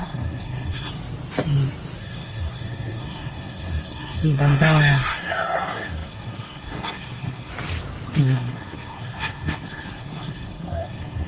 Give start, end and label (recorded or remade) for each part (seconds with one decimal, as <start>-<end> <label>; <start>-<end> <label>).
0.0-0.9 remade; 0.9-2.0 recorded; 2.0-7.5 remade; 7.5-8.2 recorded; 8.2-11.3 remade